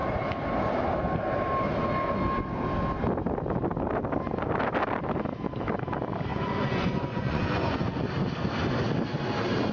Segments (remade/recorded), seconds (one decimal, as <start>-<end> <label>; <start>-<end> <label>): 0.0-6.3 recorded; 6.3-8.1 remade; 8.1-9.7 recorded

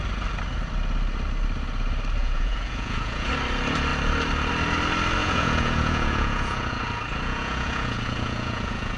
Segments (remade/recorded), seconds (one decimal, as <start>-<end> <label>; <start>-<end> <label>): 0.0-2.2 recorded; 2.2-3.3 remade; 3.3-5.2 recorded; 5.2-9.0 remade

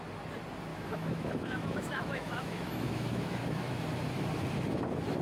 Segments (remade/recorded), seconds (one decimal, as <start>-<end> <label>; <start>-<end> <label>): 0.0-0.7 recorded; 0.7-3.8 remade; 3.8-5.2 recorded